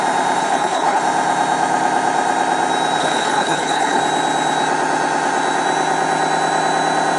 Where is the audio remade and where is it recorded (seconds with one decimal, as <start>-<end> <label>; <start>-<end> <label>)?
0.0-0.4 recorded; 0.4-1.0 remade; 1.0-3.0 recorded; 3.0-4.0 remade; 4.0-7.2 recorded